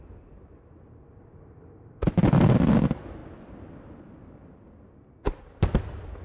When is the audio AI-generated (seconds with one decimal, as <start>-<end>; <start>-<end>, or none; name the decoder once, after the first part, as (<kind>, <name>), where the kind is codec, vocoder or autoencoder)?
0.0-3.2 (vocoder, BigVGAN v2); 3.8-4.2; 5.4-6.2